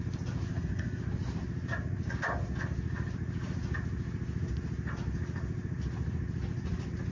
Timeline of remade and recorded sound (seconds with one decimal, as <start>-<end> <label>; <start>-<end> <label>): 0.0-0.5 recorded; 0.5-1.0 remade; 1.0-7.1 recorded